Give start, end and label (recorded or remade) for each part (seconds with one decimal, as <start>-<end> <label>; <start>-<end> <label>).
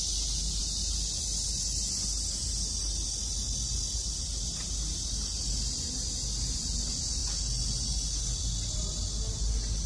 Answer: 0.0-9.9 recorded